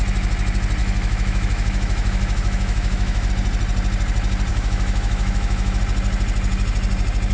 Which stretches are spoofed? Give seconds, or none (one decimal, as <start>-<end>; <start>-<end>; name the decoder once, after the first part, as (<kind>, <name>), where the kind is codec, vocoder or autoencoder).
0.8-3.3 (autoencoder, DAC-VAE); 4.5-5.8